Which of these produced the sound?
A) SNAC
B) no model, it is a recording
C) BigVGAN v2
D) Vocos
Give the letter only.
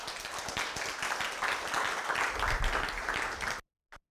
B